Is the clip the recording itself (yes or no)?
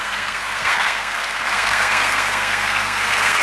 no